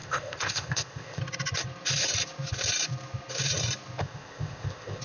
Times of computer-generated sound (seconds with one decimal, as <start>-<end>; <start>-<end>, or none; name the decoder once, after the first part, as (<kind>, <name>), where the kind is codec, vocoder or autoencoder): 0.0-1.2 (codec, ZipCodec); 4.0-5.0